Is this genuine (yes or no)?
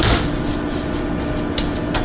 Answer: yes